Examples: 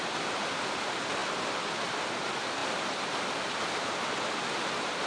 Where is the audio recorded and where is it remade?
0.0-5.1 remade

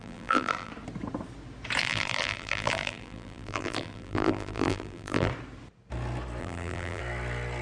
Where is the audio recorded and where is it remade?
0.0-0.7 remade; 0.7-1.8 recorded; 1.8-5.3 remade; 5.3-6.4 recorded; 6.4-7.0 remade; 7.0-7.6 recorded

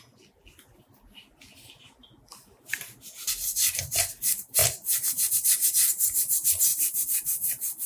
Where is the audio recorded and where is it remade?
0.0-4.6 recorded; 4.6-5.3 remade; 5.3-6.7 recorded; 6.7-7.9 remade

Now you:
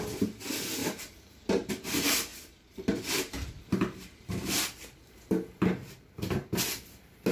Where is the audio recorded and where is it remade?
0.0-0.8 recorded; 0.8-1.7 remade; 1.7-2.3 recorded; 2.3-4.5 remade; 4.5-7.3 recorded